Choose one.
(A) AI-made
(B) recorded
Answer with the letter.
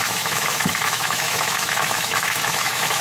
A